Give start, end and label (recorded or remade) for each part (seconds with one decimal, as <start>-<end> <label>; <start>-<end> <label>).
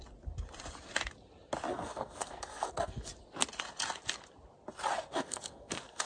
0.0-1.7 recorded; 1.7-3.1 remade; 3.1-5.1 recorded; 5.1-6.1 remade